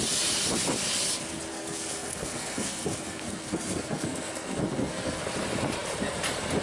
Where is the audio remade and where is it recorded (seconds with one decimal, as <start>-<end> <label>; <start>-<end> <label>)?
0.0-1.5 recorded; 1.5-5.2 remade; 5.2-6.6 recorded